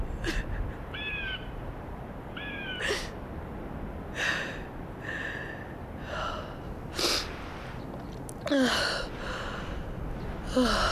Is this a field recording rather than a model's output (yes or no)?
yes